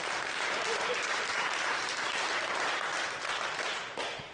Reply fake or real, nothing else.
fake